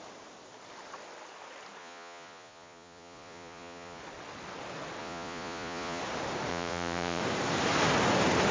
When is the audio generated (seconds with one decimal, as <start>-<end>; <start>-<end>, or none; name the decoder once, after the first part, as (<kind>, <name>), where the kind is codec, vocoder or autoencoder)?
1.8-4.0 (vocoder, Vocos); 5.0-6.0; 6.5-7.2